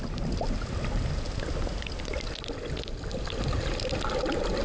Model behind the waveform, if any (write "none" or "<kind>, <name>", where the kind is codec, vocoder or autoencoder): none